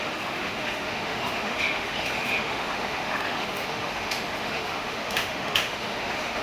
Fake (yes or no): yes